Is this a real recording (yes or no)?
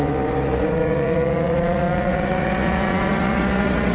no